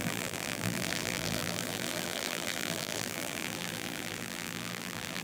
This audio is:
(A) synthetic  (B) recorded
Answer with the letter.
A